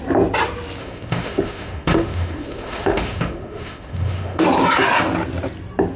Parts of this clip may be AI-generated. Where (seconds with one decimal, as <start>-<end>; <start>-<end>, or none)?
0.8-4.4